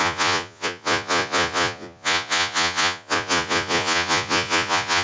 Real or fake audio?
fake